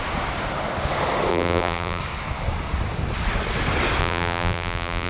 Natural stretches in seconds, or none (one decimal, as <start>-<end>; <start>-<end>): 0.0-1.3; 2.0-4.0